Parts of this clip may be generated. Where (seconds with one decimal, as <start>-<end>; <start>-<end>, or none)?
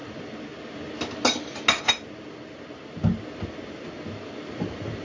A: none